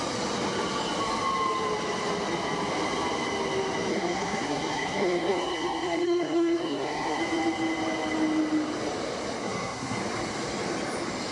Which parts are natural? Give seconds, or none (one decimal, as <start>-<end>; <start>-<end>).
0.0-3.9; 7.2-9.4; 10.0-11.3

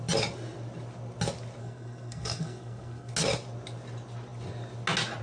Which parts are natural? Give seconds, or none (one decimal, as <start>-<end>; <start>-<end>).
0.0-1.6; 3.1-5.2

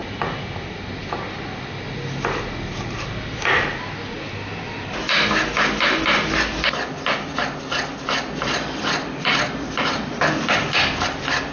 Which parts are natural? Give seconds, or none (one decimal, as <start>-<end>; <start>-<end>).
0.0-11.5

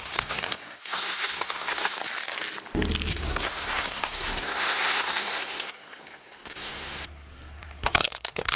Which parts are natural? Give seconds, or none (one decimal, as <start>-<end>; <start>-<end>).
2.0-3.1

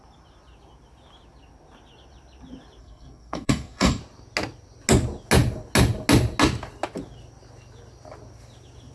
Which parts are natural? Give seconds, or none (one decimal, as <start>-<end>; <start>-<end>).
0.0-2.8; 4.0-8.9

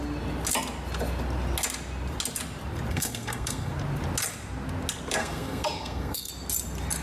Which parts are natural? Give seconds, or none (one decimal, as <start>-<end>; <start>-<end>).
0.0-2.9; 3.7-5.2; 6.3-7.0